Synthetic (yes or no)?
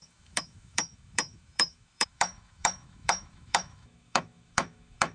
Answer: yes